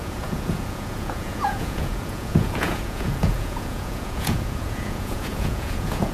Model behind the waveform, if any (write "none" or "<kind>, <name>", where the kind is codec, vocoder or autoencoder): vocoder, Vocos